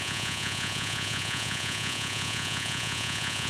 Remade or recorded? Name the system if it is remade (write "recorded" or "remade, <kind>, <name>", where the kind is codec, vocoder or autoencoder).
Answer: remade, vocoder, Vocos